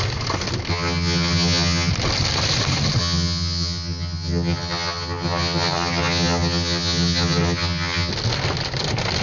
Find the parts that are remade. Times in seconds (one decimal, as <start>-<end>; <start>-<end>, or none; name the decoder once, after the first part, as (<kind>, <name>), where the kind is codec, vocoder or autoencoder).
0.7-1.9 (vocoder, HiFi-GAN); 3.0-8.1

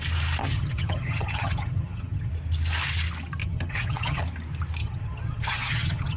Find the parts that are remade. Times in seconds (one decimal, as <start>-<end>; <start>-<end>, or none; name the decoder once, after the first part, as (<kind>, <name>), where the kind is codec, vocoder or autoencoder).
0.4-2.3 (vocoder, HiFi-GAN); 3.4-4.2; 4.8-6.2

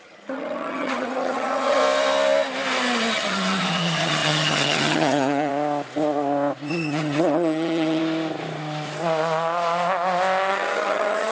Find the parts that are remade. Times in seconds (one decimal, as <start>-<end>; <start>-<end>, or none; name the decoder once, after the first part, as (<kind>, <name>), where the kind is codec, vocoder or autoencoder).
0.0-1.8 (vocoder, HiFi-GAN); 3.1-5.5; 6.7-8.0; 10.5-11.3